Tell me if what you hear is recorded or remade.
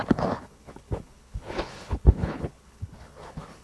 remade